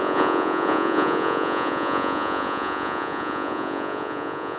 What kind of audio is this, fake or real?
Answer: fake